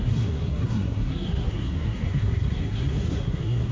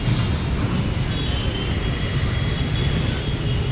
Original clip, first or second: second